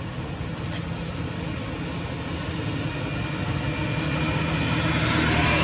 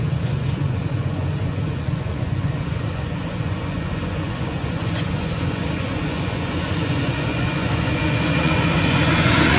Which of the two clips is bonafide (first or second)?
first